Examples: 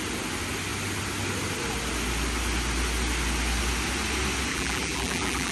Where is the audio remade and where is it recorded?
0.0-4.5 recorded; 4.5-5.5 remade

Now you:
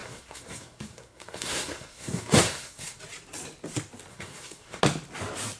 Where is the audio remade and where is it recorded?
0.0-3.0 remade; 3.0-4.1 recorded; 4.1-4.8 remade; 4.8-5.6 recorded

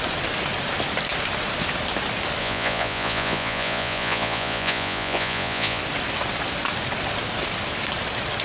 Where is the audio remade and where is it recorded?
0.0-2.4 recorded; 2.4-5.8 remade; 5.8-8.4 recorded